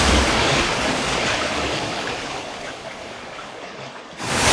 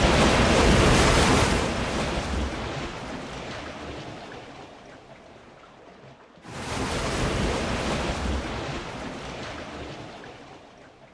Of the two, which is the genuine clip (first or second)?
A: second